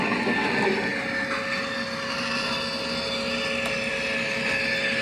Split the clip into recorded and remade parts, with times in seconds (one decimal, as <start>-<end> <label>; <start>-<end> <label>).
0.0-5.0 recorded